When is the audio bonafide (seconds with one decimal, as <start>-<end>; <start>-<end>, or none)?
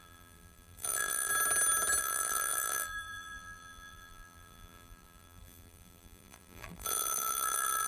1.3-2.0